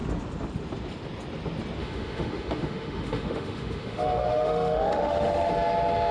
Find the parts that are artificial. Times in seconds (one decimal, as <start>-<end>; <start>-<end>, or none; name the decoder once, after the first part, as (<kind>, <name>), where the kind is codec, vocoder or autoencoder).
1.8-5.5 (autoencoder, DAC-VAE)